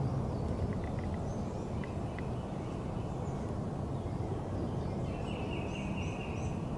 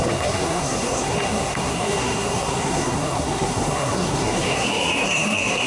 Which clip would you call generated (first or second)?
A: second